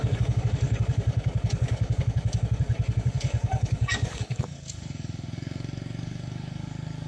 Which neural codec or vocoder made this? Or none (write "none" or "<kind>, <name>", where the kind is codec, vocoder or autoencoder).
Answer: codec, DAC